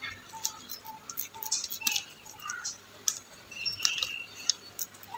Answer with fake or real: real